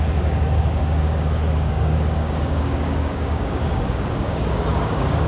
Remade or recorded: remade